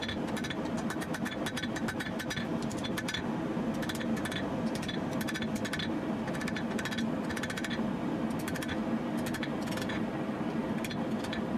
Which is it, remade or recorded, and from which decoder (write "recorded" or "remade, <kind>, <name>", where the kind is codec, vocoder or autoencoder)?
recorded